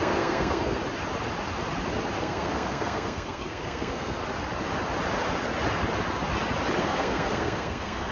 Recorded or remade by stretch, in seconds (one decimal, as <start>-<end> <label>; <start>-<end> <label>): 0.0-0.8 remade; 0.8-2.2 recorded; 2.2-4.2 remade; 4.2-6.8 recorded; 6.8-8.1 remade